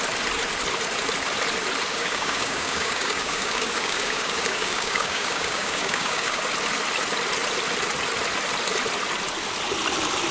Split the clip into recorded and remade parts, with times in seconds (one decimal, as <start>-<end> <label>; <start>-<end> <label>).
0.0-1.9 recorded; 1.9-6.4 remade; 6.4-10.3 recorded